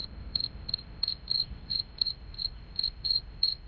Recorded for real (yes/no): no